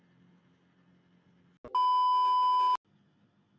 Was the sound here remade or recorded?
recorded